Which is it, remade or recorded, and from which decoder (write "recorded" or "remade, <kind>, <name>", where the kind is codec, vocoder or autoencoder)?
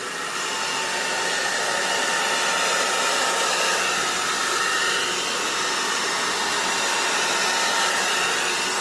recorded